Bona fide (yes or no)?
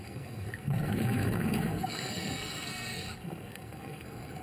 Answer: no